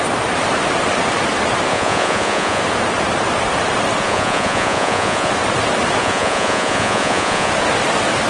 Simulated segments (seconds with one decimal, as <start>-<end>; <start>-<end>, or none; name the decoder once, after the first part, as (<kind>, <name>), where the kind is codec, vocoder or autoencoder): 1.7-2.6 (vocoder, Vocos); 4.0-5.3; 6.0-7.5